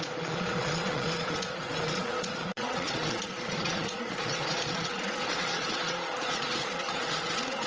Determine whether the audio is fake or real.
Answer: fake